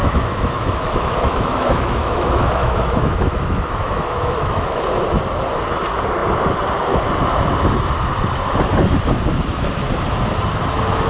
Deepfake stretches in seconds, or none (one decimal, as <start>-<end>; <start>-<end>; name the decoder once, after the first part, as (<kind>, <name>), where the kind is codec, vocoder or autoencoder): 0.0-4.8 (autoencoder, DAC-VAE)